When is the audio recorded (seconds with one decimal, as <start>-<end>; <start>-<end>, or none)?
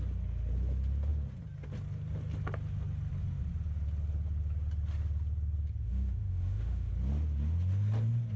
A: 0.0-5.8; 6.9-8.4